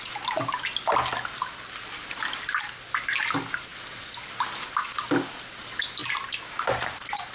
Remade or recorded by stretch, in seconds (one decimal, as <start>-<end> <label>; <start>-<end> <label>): 0.0-6.0 recorded; 6.0-7.3 remade